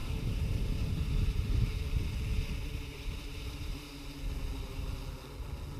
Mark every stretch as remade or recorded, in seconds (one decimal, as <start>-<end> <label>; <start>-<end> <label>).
0.0-1.8 remade; 1.8-2.6 recorded; 2.6-4.0 remade; 4.0-5.8 recorded